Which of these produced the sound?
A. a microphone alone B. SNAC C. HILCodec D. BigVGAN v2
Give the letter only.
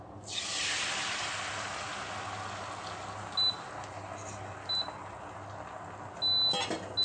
A